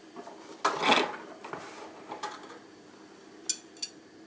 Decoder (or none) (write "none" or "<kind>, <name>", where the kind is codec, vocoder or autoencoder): none